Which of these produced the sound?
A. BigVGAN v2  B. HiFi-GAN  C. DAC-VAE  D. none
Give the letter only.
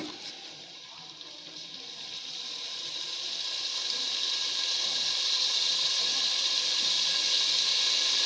A